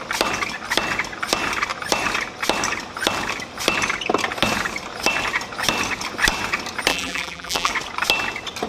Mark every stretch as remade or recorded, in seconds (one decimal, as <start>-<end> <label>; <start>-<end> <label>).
0.0-6.9 recorded; 6.9-7.7 remade; 7.7-8.7 recorded